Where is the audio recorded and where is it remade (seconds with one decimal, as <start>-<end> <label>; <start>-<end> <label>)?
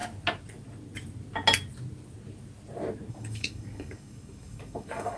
0.0-3.1 recorded; 3.1-5.2 remade